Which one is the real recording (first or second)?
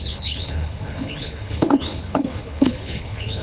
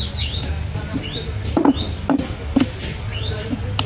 second